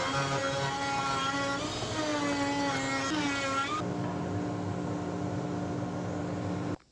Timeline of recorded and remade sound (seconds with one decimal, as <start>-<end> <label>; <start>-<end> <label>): 0.0-6.9 recorded